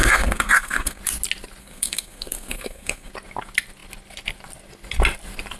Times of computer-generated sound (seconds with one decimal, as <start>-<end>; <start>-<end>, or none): 0.0-1.0; 1.6-3.1